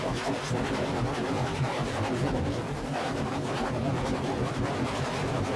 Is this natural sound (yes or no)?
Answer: yes